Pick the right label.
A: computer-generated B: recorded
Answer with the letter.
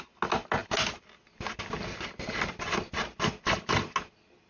B